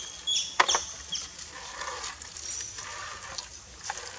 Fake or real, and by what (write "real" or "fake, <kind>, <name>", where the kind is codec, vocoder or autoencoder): real